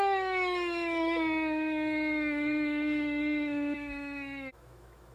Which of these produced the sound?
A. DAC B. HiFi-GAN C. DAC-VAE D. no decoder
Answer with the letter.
C